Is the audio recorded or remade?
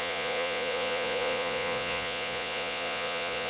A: remade